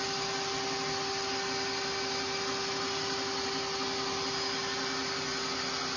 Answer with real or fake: real